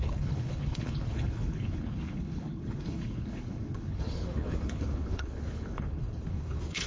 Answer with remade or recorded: remade